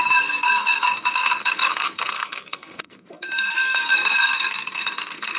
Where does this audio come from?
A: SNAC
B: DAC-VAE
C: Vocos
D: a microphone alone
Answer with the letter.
A